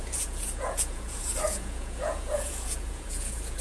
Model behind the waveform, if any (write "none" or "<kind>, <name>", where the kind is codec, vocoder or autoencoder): vocoder, Vocos